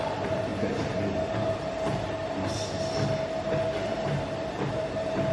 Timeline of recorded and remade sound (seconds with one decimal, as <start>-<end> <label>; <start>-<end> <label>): 0.0-2.2 remade; 2.2-3.4 recorded; 3.4-3.9 remade; 3.9-4.5 recorded; 4.5-5.3 remade